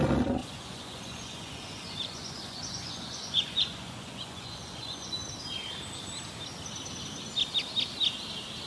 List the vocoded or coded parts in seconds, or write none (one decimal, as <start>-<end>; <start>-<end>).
0.4-5.2